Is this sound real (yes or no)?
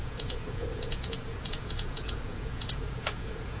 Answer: no